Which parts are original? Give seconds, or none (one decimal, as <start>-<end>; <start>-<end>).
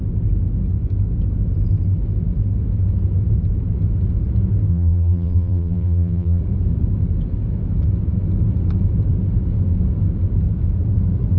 0.0-4.7; 6.4-11.4